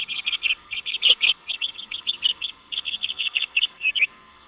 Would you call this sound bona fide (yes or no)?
no